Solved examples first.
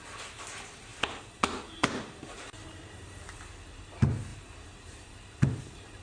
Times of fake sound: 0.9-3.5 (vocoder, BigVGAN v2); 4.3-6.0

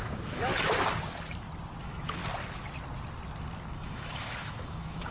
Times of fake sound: 0.0-0.5 (autoencoder, DAC-VAE); 1.8-2.2; 3.7-5.1

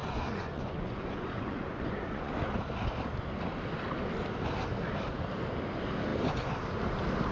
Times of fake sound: 0.0-2.3 (vocoder, Vocos)

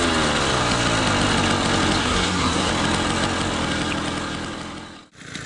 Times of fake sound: 2.0-2.7 (codec, SNAC)

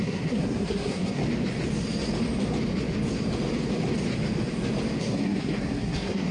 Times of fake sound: 0.0-1.2 (codec, SNAC); 5.0-6.3